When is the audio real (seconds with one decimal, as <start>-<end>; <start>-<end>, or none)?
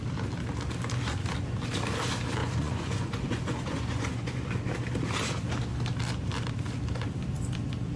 0.0-2.4; 4.5-8.0